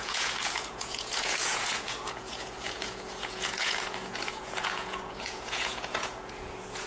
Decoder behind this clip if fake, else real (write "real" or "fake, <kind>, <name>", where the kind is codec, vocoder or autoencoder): fake, vocoder, Vocos